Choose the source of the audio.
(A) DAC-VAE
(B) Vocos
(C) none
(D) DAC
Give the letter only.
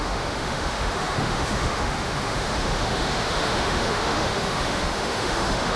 A